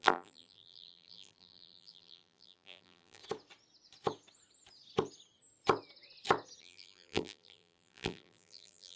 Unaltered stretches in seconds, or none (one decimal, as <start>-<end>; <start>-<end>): 3.2-6.6